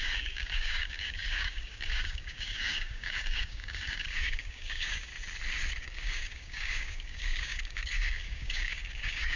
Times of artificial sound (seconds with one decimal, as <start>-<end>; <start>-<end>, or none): 0.0-5.1; 5.8-9.4